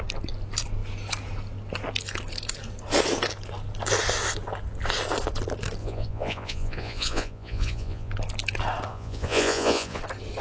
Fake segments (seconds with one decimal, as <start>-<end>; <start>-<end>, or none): 5.8-8.1; 8.9-10.0